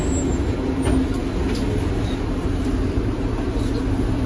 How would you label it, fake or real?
real